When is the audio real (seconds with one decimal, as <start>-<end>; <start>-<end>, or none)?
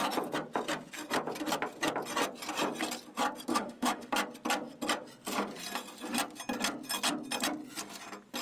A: 0.0-3.5; 4.1-8.4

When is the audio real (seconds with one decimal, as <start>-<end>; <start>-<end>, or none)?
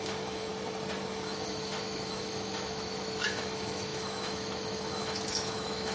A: 0.5-1.1